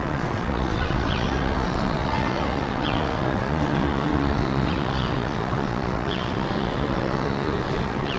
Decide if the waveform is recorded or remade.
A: remade